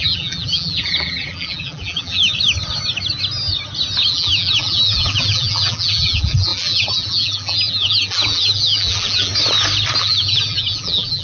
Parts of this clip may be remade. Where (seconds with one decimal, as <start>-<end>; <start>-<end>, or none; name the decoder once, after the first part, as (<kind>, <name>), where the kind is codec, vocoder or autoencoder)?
0.0-2.3 (vocoder, BigVGAN v2); 4.1-9.3; 10.0-11.2